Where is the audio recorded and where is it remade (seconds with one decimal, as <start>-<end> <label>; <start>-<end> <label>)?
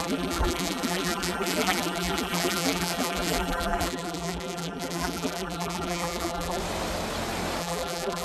0.0-6.6 remade; 6.6-7.6 recorded; 7.6-8.2 remade